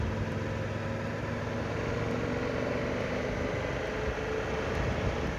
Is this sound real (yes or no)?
yes